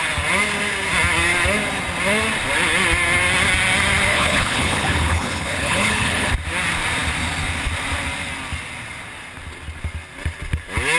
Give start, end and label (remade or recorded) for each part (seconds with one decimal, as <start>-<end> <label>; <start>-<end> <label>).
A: 0.0-4.1 recorded; 4.1-6.3 remade; 6.3-11.0 recorded